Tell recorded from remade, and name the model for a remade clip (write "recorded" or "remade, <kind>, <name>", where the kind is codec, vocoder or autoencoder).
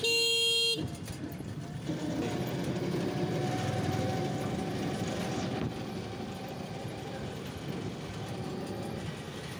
recorded